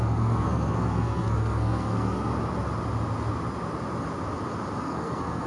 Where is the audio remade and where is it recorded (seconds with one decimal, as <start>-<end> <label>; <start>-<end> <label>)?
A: 0.0-2.3 remade; 2.3-4.8 recorded; 4.8-5.5 remade